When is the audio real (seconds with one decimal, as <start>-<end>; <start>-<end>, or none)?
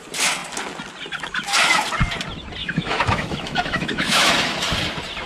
0.0-2.6; 4.3-5.3